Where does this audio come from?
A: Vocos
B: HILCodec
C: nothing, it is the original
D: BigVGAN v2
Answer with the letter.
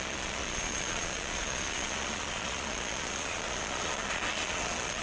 A